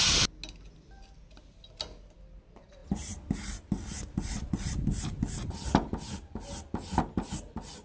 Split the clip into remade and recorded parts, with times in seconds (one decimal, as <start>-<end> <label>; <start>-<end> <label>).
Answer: 0.0-7.8 recorded